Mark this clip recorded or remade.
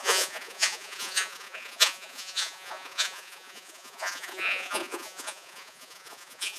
remade